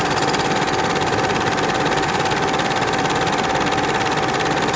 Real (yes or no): no